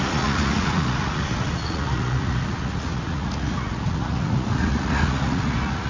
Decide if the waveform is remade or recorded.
remade